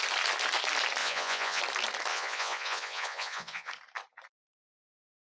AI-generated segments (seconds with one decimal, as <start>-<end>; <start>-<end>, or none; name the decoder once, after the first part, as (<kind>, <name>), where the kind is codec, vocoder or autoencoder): 1.0-1.6 (vocoder, Vocos); 2.1-3.7